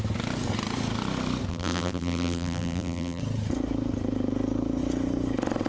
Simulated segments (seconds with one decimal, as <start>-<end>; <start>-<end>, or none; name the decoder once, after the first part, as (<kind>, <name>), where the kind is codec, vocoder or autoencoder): 1.5-3.2 (vocoder, BigVGAN v2)